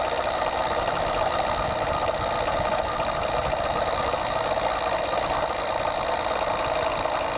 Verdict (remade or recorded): recorded